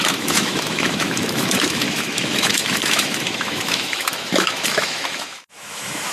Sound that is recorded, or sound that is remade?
remade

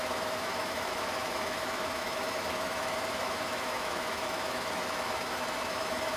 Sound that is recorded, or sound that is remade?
remade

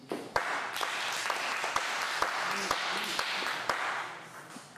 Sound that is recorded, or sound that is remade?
recorded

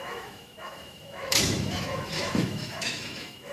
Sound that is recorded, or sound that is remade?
remade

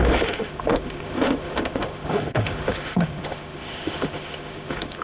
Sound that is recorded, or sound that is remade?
remade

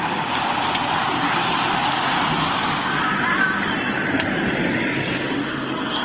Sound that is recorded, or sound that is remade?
recorded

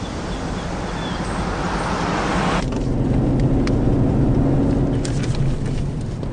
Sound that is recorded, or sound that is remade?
recorded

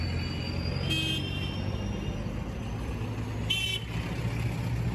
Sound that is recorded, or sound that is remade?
recorded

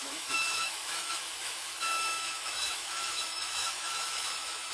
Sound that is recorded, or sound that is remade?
remade